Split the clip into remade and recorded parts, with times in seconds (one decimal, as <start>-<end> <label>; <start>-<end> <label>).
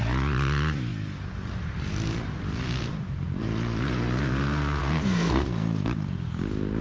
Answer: 0.0-4.8 recorded; 4.8-5.8 remade; 5.8-6.8 recorded